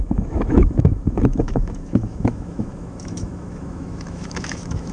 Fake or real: fake